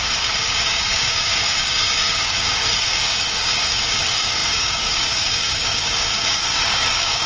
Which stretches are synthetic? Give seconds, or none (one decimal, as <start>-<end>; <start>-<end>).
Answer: 0.0-7.3